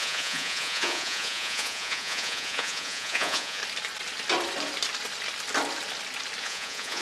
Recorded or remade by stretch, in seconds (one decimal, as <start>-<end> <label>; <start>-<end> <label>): 0.0-3.6 remade; 3.6-6.4 recorded; 6.4-7.0 remade